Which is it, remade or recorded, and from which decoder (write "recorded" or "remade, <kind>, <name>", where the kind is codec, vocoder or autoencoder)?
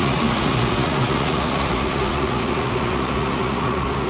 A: remade, vocoder, Vocos